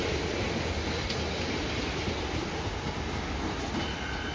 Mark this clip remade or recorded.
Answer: recorded